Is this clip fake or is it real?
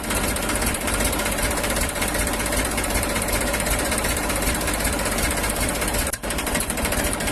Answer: fake